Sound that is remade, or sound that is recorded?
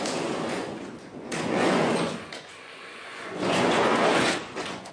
remade